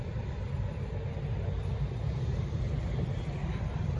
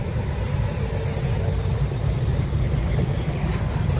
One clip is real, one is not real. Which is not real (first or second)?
first